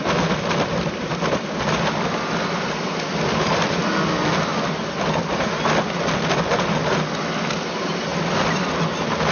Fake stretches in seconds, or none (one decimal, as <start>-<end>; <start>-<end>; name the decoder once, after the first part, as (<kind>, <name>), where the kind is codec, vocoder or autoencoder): 0.0-4.5 (vocoder, BigVGAN v2); 6.9-9.3